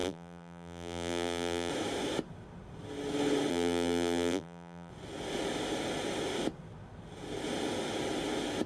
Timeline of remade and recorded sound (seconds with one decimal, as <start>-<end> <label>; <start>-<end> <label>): 0.0-1.7 remade; 1.7-3.5 recorded; 3.5-4.9 remade; 4.9-8.7 recorded